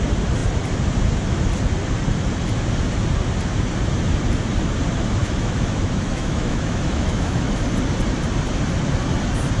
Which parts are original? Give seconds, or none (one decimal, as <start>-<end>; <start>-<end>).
0.0-5.2; 7.6-9.6